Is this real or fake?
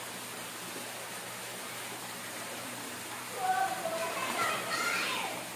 real